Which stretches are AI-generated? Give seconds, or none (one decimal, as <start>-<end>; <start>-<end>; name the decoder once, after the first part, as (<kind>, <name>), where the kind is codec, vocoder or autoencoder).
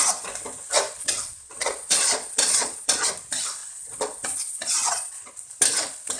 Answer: 1.0-3.1 (vocoder, Vocos); 3.6-5.3